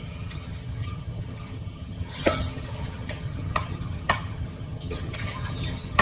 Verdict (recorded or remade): remade